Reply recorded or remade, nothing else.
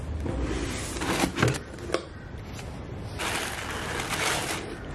recorded